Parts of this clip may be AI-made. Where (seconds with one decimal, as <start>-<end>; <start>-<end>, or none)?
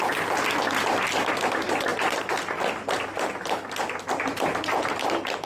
none